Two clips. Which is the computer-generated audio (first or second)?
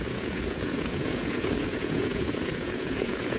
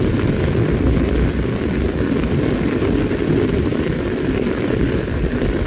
first